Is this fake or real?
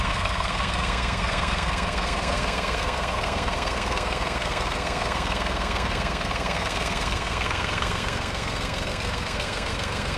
fake